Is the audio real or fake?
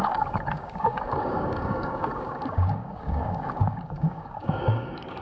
fake